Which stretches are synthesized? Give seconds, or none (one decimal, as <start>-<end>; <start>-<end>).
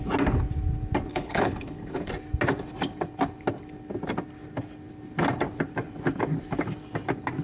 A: 1.1-2.1